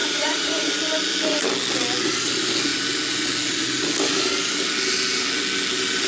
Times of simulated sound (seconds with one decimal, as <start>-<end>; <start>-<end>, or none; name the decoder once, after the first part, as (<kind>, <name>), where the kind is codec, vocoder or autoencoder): 0.0-0.7 (vocoder, Vocos)